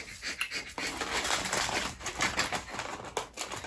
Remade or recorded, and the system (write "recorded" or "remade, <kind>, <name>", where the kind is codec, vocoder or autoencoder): recorded